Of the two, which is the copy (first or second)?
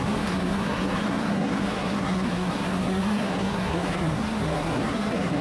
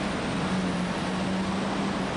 first